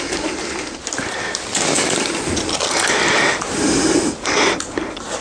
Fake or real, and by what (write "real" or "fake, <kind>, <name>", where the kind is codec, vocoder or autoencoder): real